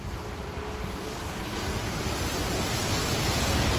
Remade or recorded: recorded